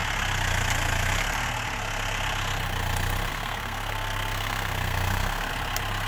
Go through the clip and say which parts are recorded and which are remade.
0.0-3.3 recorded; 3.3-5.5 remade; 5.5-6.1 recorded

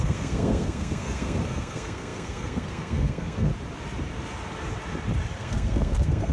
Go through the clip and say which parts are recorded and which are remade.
0.0-3.5 remade; 3.5-5.4 recorded; 5.4-6.3 remade

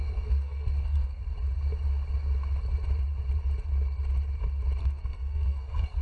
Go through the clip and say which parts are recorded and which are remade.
0.0-1.2 remade; 1.2-4.8 recorded; 4.8-6.0 remade

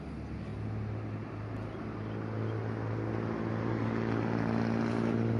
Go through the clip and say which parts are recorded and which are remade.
0.0-5.4 recorded

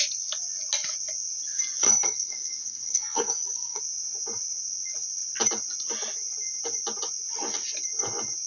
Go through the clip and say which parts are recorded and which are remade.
0.0-1.8 recorded; 1.8-3.8 remade; 3.8-8.5 recorded

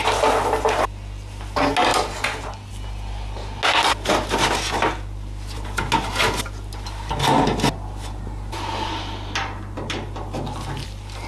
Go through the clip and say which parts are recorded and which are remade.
0.0-11.3 recorded

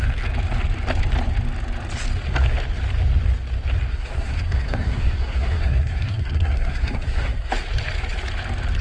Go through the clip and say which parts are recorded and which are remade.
0.0-3.9 recorded; 3.9-7.5 remade; 7.5-8.8 recorded